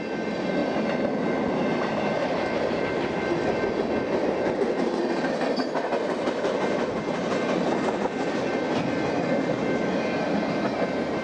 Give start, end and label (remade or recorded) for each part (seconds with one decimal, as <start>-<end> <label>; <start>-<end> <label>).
0.0-11.2 recorded